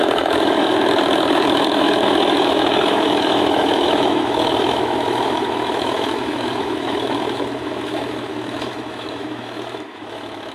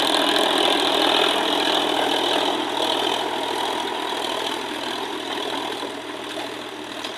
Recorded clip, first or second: second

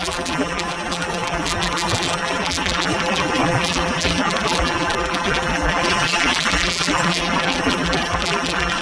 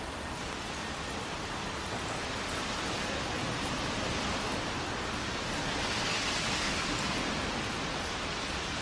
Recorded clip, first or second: second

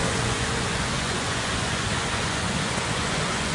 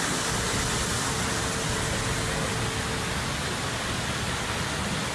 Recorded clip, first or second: second